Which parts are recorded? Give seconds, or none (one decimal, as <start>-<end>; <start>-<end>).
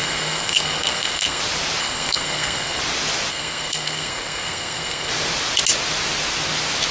1.4-1.8; 2.8-3.3; 5.1-6.9